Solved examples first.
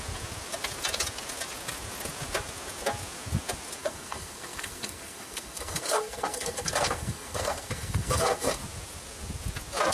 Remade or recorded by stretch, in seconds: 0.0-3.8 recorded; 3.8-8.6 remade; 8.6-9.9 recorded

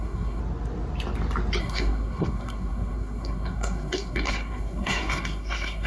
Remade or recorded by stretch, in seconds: 0.0-0.4 remade; 0.4-1.6 recorded; 1.6-5.9 remade

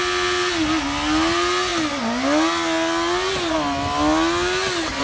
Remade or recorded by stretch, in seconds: 0.0-5.0 recorded

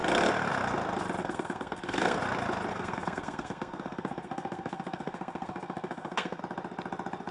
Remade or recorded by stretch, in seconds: 0.0-1.2 recorded; 1.2-2.2 remade; 2.2-2.7 recorded; 2.7-6.4 remade; 6.4-7.3 recorded